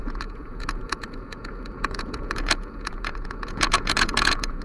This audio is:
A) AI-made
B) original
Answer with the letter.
A